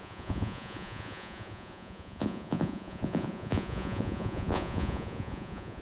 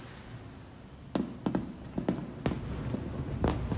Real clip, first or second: second